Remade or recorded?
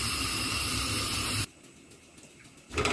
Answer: recorded